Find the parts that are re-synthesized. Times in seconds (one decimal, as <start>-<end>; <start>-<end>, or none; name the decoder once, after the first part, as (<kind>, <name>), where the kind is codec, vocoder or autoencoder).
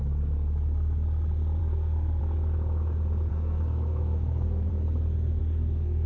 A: 1.6-2.2 (codec, SNAC); 3.3-4.7; 5.4-6.1